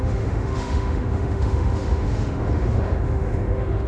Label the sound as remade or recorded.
remade